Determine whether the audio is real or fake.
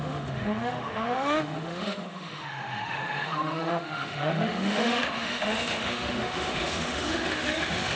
fake